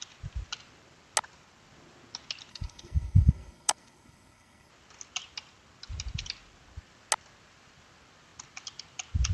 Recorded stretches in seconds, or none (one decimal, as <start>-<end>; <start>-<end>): 0.0-2.5; 4.7-9.3